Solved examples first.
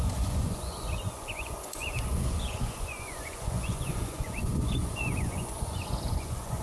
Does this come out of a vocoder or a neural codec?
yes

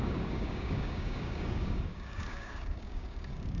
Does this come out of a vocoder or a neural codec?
yes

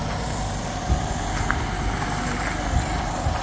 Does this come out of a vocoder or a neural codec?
no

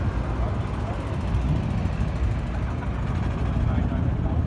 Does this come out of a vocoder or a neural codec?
no